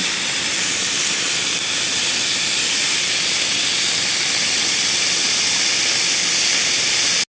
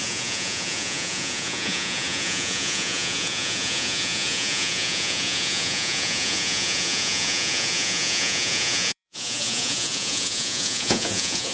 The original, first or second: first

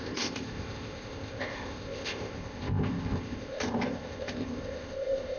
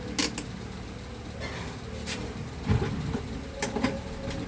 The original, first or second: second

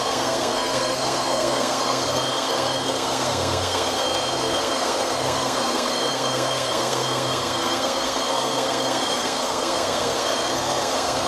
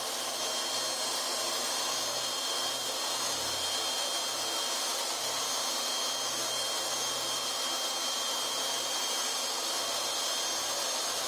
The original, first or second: second